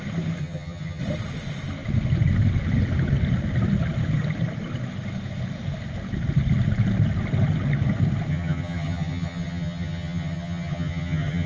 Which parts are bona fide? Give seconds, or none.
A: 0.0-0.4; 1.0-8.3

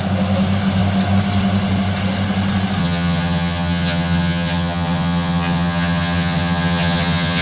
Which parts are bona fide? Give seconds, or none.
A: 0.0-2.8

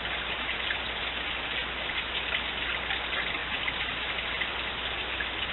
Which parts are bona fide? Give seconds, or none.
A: 0.0-5.5

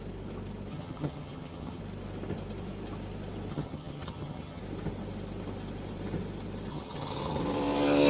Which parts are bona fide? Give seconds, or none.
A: 0.0-0.7; 1.8-3.5; 4.6-6.7; 7.4-8.1

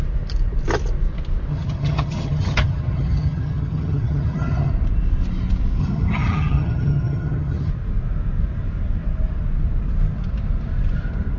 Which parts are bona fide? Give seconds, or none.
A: 0.0-1.5; 4.7-5.8; 7.7-11.4

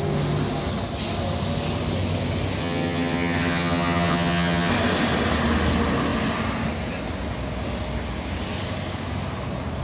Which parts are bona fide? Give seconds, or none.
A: 0.0-2.6; 4.7-9.8